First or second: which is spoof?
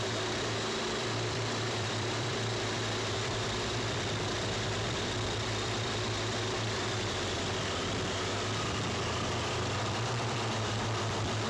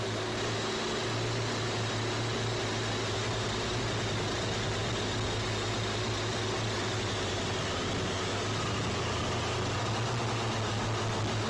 first